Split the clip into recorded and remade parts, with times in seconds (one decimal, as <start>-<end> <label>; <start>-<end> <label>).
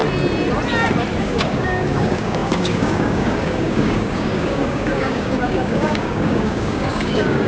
0.0-1.2 recorded; 1.2-7.5 remade